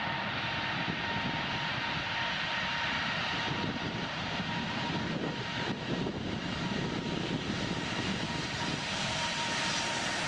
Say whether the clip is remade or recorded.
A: remade